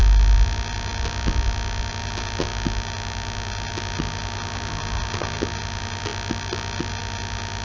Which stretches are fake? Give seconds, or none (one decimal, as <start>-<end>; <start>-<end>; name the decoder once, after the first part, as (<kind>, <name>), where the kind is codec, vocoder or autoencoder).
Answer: none